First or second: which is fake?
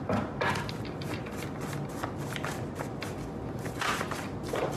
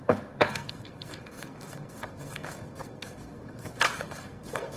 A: second